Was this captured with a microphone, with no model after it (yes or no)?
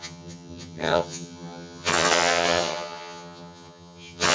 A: no